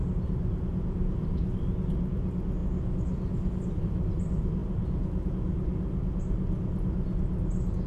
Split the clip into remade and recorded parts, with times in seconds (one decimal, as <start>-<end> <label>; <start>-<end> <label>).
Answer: 0.0-7.9 recorded